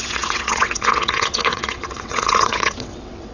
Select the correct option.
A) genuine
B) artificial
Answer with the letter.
B